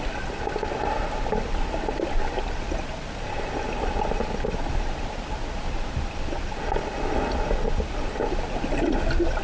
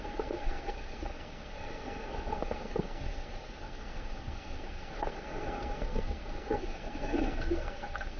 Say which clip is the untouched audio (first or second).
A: first